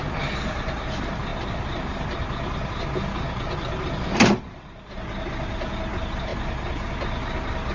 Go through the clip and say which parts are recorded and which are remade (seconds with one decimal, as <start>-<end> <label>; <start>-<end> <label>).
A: 0.0-7.7 recorded